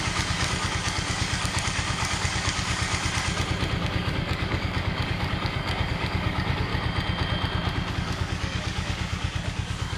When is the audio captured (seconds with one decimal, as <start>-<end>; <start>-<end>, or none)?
3.0-3.8; 6.7-7.9